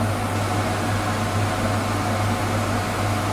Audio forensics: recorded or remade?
recorded